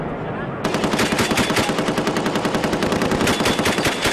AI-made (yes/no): no